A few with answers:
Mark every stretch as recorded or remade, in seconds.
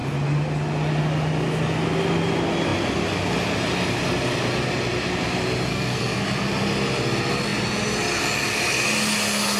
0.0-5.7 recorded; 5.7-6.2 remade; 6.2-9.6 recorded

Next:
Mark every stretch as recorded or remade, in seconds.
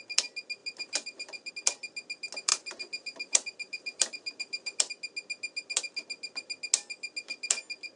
0.0-0.6 recorded; 0.6-1.5 remade; 1.5-2.5 recorded; 2.5-4.8 remade; 4.8-8.0 recorded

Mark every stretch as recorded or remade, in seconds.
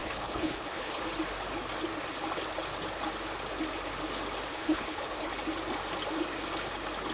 0.0-1.0 remade; 1.0-4.5 recorded; 4.5-5.3 remade; 5.3-7.1 recorded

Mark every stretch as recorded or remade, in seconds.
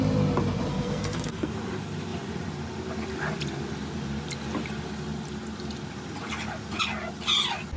0.0-0.7 recorded; 0.7-1.5 remade; 1.5-7.8 recorded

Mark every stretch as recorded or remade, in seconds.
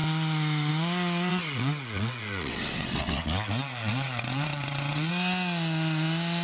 0.0-1.3 recorded; 1.3-5.1 remade; 5.1-6.4 recorded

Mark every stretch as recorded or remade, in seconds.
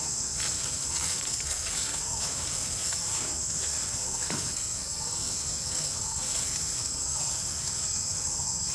0.0-8.7 remade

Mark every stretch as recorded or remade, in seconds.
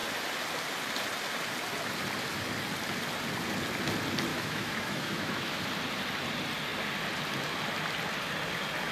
0.0-4.3 recorded; 4.3-5.6 remade; 5.6-8.9 recorded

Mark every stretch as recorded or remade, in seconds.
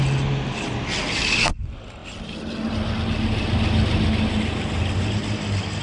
0.0-5.8 recorded